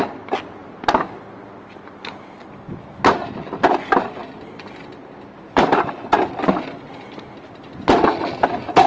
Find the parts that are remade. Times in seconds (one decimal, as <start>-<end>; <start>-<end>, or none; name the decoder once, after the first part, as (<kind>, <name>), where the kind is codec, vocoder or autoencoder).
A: 5.0-5.9 (vocoder, BigVGAN v2)